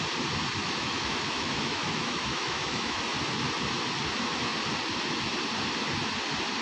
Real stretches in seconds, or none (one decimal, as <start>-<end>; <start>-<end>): 0.0-0.6; 3.0-6.6